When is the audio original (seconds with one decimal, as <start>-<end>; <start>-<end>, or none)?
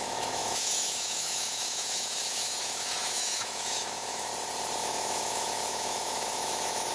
4.3-4.8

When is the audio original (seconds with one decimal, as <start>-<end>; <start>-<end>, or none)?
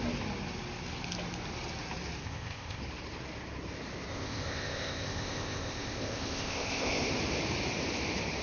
0.0-2.2; 2.8-4.1; 7.1-8.4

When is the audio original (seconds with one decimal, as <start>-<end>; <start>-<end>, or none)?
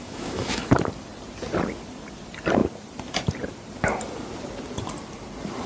0.7-5.7